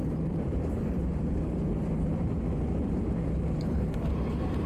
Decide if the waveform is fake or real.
fake